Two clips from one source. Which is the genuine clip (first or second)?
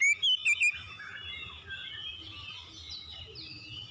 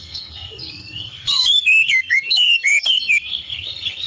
first